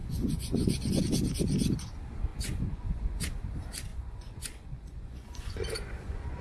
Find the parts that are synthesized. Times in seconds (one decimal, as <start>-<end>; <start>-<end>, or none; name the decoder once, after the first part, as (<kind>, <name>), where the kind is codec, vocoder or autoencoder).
0.0-1.0 (vocoder, Vocos); 2.3-3.3; 3.9-6.4